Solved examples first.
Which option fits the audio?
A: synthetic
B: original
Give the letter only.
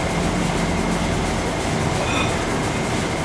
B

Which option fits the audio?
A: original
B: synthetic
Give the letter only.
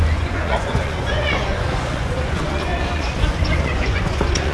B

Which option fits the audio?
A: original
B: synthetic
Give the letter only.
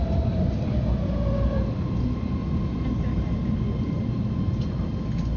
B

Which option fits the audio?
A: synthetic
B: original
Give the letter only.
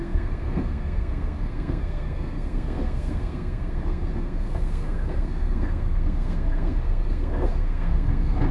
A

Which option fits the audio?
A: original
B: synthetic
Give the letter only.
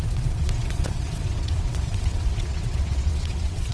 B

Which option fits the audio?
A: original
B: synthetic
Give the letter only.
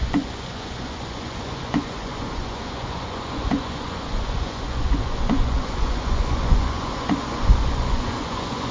B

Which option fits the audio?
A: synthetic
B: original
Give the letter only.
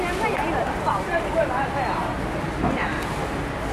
B